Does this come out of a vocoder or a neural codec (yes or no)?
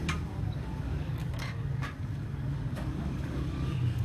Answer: yes